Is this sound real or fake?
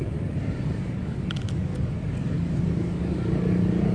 fake